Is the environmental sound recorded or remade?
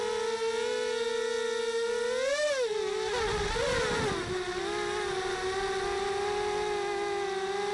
recorded